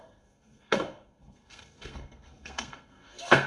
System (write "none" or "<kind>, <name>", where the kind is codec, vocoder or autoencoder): codec, SNAC